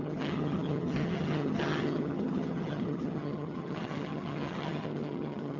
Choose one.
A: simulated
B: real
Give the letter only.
A